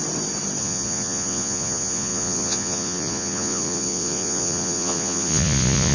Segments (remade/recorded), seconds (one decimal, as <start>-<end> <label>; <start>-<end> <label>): 0.0-0.6 recorded; 0.6-5.9 remade